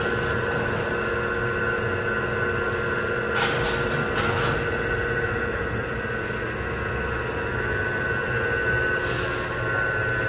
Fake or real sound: real